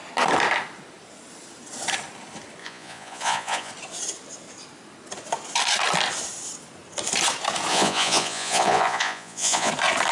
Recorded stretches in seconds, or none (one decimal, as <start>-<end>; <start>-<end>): 0.0-2.6; 3.7-7.7; 9.7-10.1